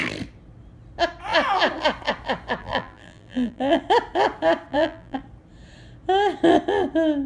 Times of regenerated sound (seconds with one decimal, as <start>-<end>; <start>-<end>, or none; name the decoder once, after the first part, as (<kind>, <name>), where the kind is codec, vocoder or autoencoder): 2.6-3.8 (vocoder, BigVGAN v2); 4.7-5.2